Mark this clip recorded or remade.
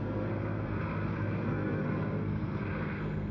remade